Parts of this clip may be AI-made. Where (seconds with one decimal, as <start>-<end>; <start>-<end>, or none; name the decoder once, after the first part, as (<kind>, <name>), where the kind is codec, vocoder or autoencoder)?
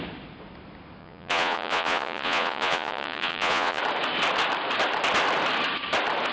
1.0-3.8 (vocoder, Vocos)